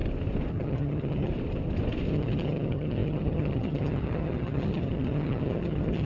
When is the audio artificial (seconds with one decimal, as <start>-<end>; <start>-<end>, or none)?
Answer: 0.5-1.3; 2.1-6.0